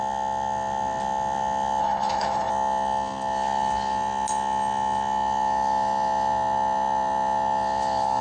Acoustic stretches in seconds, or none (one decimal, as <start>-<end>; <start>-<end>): 0.0-1.8; 2.5-8.2